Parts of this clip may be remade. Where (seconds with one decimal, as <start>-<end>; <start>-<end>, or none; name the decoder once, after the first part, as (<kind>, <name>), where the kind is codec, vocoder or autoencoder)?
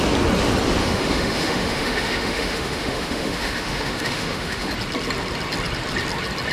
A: 0.8-4.7 (autoencoder, DAC-VAE)